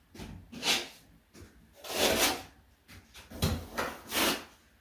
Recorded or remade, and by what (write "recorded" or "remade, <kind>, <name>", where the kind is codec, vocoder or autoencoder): recorded